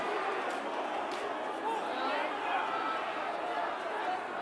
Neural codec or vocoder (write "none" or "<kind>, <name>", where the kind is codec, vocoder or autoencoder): none